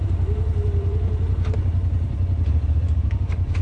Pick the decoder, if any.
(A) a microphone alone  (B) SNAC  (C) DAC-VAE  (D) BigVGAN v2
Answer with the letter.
D